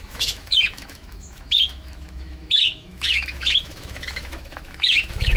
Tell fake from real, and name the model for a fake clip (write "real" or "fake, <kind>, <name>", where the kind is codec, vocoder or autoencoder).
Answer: fake, autoencoder, DAC-VAE